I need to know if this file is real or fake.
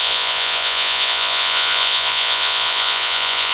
fake